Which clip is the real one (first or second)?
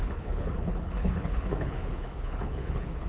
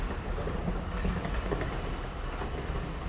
second